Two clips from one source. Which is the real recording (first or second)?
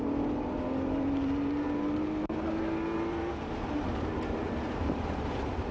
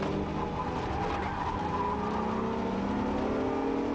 second